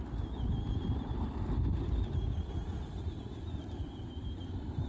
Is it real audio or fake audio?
real